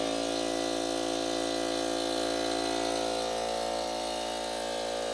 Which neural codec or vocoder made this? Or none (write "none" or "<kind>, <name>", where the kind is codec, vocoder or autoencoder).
none